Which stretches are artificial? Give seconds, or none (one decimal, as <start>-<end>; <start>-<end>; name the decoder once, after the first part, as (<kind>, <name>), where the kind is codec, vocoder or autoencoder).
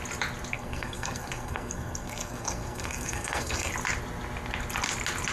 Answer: 0.5-3.7 (codec, SNAC)